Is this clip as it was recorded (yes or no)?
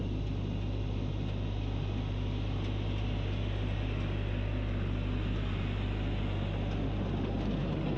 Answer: yes